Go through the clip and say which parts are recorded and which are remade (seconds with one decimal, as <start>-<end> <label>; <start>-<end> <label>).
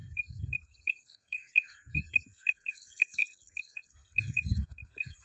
0.0-5.2 remade